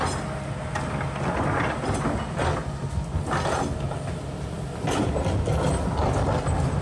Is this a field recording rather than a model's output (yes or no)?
yes